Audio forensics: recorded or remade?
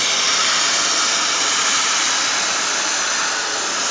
recorded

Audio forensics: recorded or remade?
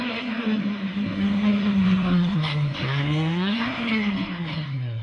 remade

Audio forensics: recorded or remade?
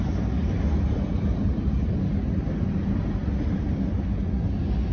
recorded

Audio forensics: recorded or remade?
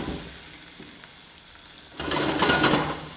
recorded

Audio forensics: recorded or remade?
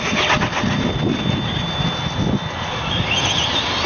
recorded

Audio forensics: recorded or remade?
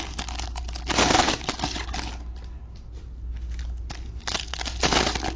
recorded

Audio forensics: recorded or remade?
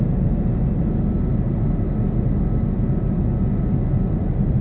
recorded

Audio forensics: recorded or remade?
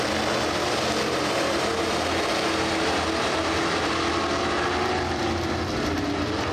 recorded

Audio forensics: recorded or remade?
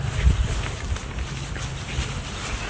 recorded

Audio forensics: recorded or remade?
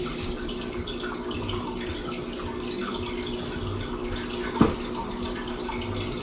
recorded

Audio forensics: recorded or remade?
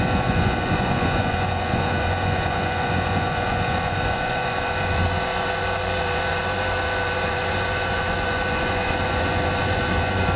remade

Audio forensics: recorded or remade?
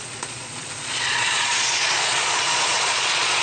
remade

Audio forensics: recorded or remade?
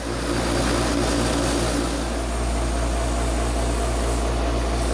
recorded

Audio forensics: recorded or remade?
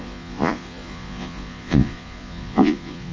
remade